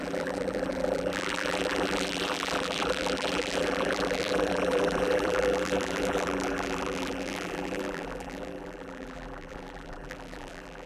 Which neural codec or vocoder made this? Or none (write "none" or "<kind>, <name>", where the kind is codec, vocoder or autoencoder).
vocoder, BigVGAN v2